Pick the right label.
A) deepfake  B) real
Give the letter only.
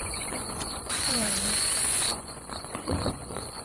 A